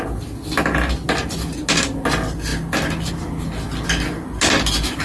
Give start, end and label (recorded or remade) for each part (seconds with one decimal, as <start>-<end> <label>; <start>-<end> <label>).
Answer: 0.0-5.0 recorded